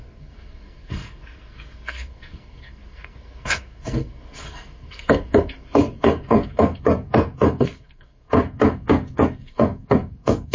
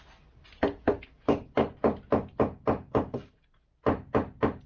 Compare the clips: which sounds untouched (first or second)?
second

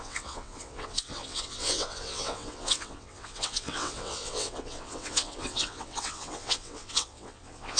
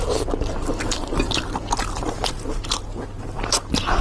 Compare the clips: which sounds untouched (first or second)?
second